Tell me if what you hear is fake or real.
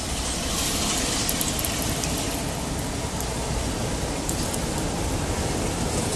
real